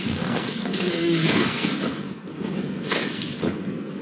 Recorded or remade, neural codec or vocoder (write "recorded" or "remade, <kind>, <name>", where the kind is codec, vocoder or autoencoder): remade, codec, SNAC